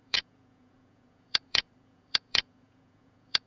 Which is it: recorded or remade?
remade